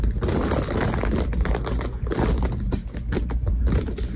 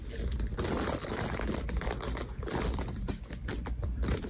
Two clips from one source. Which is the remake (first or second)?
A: second